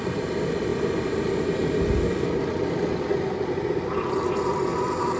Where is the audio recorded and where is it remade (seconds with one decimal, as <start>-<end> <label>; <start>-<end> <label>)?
0.0-5.2 recorded